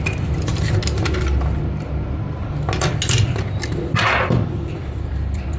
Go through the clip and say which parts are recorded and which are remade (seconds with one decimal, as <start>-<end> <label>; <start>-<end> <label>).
0.0-0.5 remade; 0.5-3.9 recorded; 3.9-5.6 remade